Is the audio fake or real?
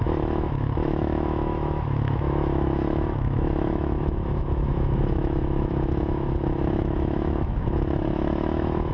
fake